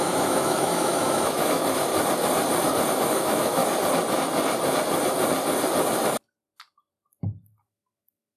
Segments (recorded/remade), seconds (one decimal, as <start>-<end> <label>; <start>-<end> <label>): 0.0-1.9 remade; 1.9-2.9 recorded; 2.9-3.6 remade; 3.6-7.6 recorded; 7.6-8.4 remade